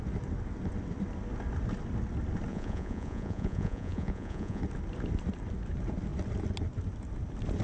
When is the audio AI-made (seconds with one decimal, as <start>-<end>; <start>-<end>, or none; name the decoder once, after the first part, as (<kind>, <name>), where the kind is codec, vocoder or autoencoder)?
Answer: 2.5-4.6 (vocoder, Vocos)